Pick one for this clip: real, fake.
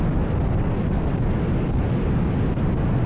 real